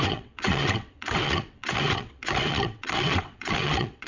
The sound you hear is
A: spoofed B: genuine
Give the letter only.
A